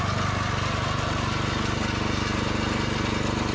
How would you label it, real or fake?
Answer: real